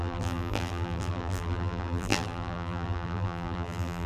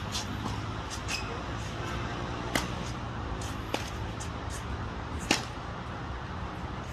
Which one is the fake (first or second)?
first